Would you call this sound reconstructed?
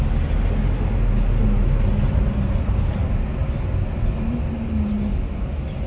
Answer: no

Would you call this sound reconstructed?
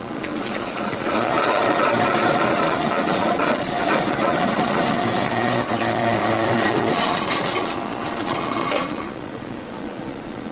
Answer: yes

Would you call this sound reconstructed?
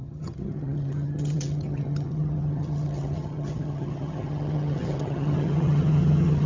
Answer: yes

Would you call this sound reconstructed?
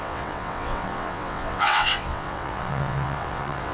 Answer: yes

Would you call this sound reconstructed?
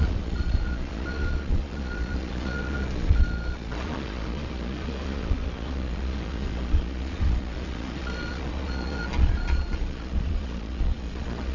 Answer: yes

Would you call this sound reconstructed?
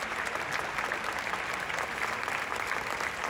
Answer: no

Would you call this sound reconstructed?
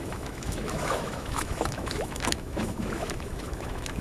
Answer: yes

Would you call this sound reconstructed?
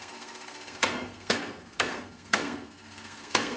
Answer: yes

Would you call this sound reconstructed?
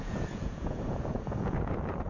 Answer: yes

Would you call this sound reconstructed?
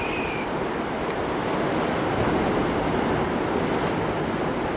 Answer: no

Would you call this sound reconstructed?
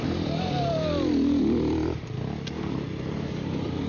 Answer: yes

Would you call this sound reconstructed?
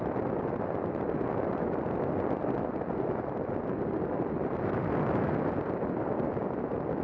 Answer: no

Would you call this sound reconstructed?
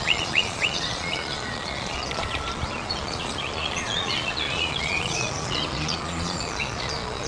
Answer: yes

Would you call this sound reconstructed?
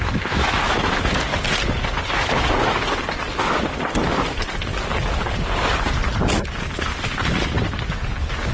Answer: no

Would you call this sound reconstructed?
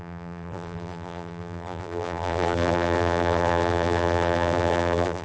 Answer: yes